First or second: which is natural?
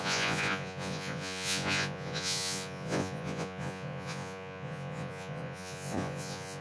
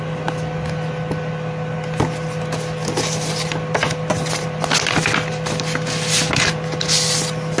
second